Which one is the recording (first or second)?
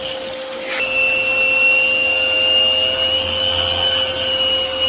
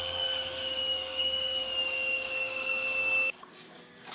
first